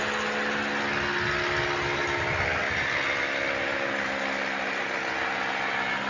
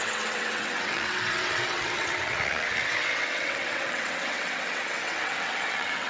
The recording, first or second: first